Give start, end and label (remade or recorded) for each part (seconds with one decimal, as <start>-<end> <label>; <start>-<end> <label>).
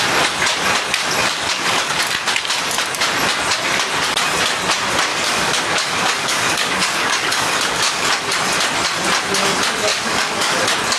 0.0-1.2 recorded; 1.2-1.9 remade; 1.9-5.1 recorded; 5.1-8.1 remade; 8.1-9.9 recorded; 9.9-10.6 remade; 10.6-11.0 recorded